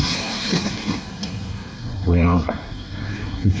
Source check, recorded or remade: remade